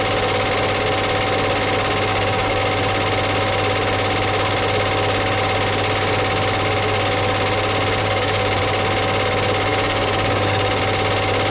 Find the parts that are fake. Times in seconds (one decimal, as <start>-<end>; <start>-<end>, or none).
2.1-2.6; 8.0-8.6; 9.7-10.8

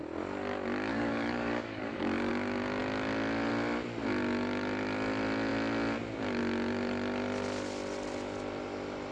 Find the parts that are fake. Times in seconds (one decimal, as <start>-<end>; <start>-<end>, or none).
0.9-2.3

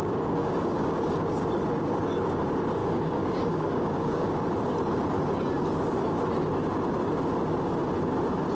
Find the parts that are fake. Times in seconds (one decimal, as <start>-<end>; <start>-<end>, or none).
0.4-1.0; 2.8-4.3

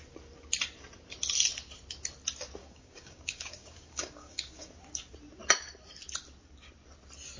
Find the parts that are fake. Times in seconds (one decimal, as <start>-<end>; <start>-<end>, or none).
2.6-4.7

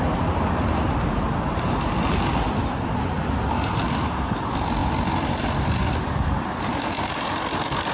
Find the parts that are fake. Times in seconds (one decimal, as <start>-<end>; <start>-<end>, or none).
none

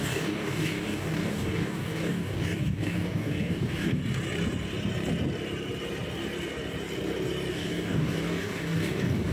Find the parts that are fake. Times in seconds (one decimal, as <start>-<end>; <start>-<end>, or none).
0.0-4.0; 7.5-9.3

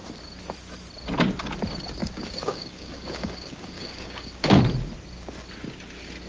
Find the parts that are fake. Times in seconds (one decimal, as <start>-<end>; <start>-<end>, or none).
2.0-4.6

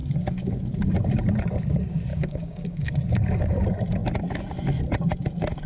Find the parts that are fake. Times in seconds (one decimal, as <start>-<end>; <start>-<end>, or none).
0.0-0.9; 2.1-2.9